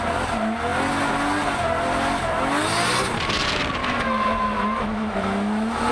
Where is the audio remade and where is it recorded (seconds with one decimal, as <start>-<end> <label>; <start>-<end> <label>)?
0.0-3.8 recorded; 3.8-5.9 remade